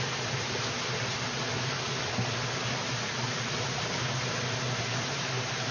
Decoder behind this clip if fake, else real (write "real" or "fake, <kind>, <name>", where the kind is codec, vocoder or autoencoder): real